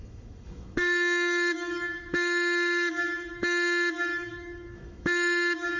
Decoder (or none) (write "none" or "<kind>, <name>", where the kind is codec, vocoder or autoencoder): autoencoder, DAC-VAE